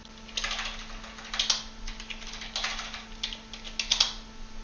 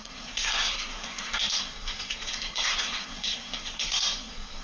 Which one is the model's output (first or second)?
second